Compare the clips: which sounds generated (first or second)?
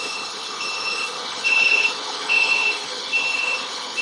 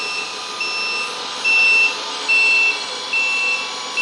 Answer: first